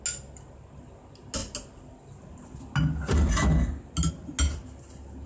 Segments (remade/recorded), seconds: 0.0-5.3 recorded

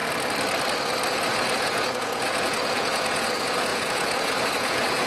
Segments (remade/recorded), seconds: 0.0-1.1 recorded; 1.1-5.1 remade

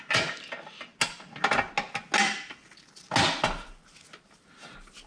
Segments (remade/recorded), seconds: 0.0-5.1 recorded

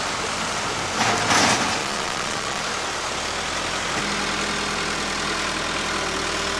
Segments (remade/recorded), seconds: 0.0-1.8 recorded; 1.8-2.6 remade; 2.6-6.6 recorded

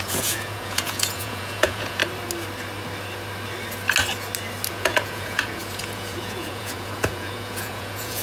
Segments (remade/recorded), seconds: 0.0-2.0 remade; 2.0-4.7 recorded; 4.7-8.2 remade

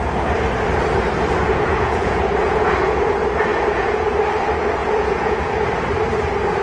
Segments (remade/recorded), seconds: 0.0-1.4 recorded; 1.4-3.1 remade; 3.1-3.5 recorded; 3.5-4.1 remade; 4.1-4.8 recorded; 4.8-5.7 remade; 5.7-6.6 recorded

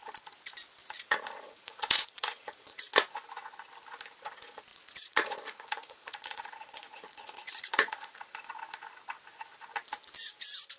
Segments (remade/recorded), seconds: 0.0-0.8 recorded; 0.8-2.8 remade; 2.8-4.7 recorded; 4.7-8.2 remade; 8.2-10.8 recorded

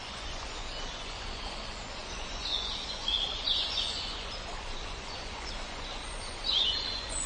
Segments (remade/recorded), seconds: 0.0-7.3 remade